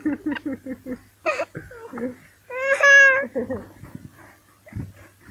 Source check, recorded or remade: recorded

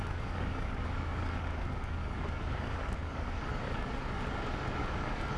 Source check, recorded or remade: remade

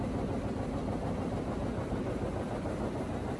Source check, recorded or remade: recorded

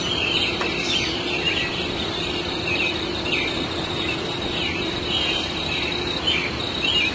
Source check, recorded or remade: recorded